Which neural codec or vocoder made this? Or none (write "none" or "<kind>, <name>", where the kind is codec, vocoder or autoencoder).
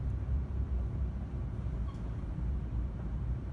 vocoder, BigVGAN v2